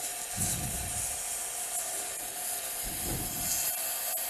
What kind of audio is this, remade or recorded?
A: recorded